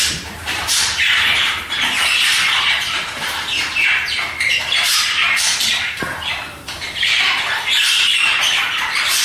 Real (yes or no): no